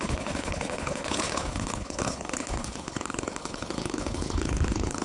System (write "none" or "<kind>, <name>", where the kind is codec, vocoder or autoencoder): codec, HILCodec